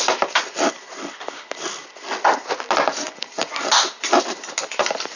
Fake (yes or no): no